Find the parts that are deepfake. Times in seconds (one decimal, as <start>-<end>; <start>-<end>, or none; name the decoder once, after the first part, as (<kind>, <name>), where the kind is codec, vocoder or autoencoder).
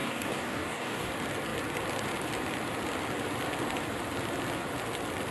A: 0.0-1.1 (codec, DAC)